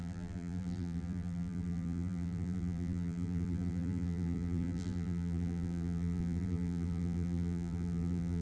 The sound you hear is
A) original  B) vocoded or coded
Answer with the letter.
B